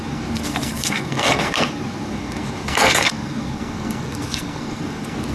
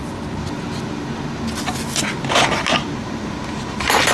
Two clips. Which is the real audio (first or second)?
second